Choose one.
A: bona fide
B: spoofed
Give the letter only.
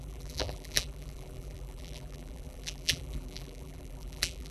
B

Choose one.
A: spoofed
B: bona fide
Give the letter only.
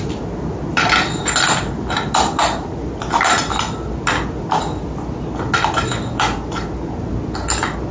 B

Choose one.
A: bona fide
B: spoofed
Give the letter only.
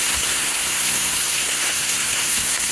B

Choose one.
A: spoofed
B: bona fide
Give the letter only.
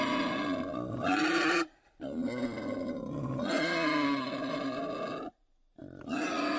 B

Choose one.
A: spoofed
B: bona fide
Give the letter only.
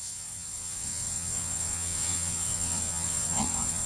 A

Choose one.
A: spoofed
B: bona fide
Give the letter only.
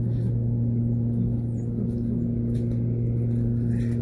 B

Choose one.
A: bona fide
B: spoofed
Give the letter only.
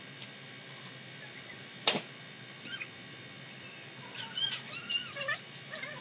B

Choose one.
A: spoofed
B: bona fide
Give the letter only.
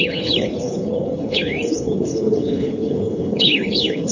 A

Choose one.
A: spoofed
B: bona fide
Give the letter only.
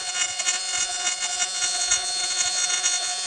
A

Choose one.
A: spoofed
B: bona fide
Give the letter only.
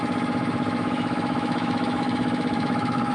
A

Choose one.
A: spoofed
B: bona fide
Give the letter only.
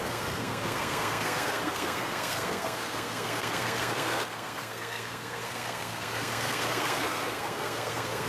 A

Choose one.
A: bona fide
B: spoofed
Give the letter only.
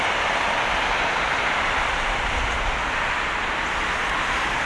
A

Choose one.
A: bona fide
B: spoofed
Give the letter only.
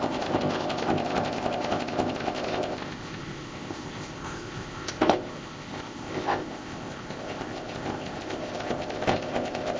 B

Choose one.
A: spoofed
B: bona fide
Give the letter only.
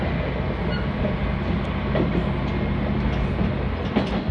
B